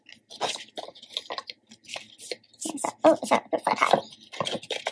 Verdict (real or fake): real